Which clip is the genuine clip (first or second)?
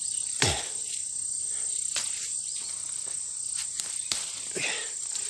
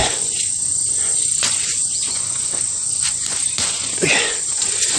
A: first